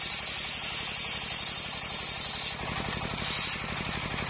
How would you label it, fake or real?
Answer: real